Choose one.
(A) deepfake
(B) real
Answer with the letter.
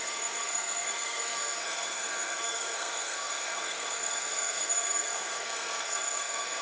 A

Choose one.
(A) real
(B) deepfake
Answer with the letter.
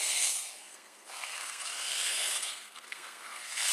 B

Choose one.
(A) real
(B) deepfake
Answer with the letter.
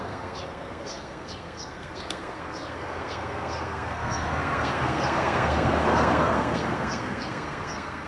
B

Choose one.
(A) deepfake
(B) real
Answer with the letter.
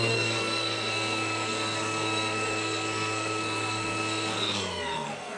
A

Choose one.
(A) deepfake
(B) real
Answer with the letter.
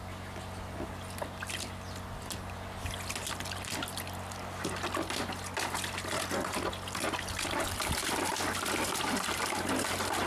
B